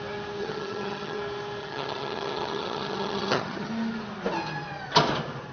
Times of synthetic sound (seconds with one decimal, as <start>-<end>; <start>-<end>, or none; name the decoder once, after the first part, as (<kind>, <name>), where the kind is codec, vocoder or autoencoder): 0.4-1.2 (vocoder, HiFi-GAN); 1.6-3.7